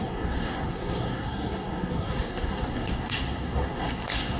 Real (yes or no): no